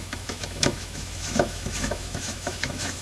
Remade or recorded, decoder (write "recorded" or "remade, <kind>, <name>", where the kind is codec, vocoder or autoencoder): remade, autoencoder, DAC-VAE